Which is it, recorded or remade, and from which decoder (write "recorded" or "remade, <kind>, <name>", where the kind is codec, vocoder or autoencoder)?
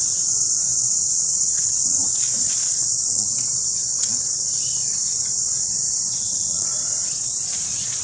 remade, vocoder, Vocos